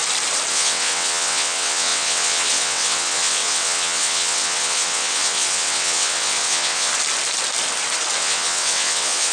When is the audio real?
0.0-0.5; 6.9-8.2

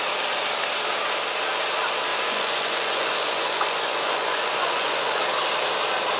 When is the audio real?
0.0-2.1; 5.2-6.2